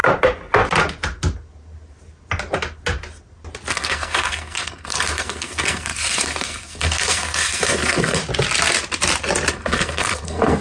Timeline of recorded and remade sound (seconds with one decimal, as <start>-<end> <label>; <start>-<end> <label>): 0.0-3.7 recorded; 3.7-8.2 remade; 8.2-9.5 recorded; 9.5-10.6 remade